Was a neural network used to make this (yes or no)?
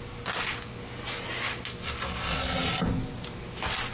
no